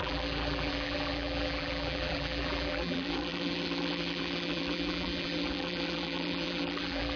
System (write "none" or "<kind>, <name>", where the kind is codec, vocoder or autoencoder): vocoder, BigVGAN v2